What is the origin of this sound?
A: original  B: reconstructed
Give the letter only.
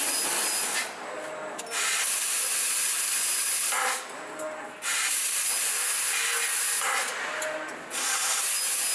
A